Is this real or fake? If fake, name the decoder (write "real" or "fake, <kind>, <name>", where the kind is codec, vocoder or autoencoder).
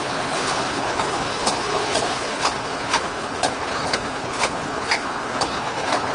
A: fake, codec, HILCodec